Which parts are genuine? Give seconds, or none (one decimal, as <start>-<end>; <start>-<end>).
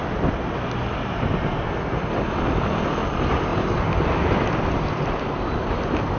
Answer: 0.0-6.2